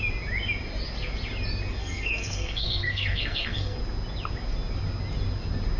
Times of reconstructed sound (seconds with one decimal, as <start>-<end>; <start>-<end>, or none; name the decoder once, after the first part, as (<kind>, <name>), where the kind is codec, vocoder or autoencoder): 1.7-3.8 (codec, SNAC)